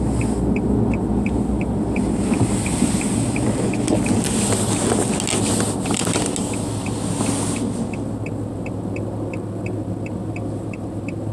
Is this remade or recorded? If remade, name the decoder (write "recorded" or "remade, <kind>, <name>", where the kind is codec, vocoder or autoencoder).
recorded